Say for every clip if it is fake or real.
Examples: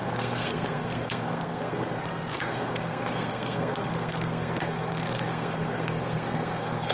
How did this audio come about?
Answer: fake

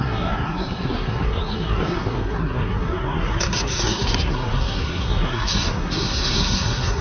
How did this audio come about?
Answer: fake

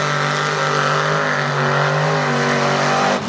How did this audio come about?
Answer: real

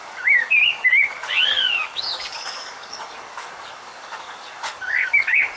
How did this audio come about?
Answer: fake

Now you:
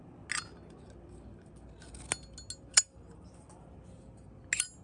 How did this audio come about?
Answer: real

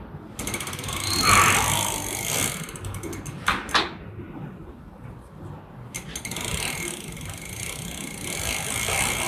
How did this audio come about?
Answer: real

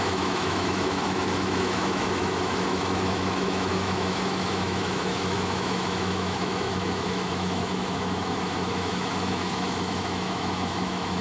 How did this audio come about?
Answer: fake